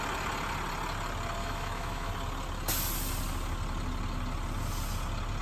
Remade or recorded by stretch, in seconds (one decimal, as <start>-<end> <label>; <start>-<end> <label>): 0.0-1.4 recorded; 1.4-2.1 remade; 2.1-5.4 recorded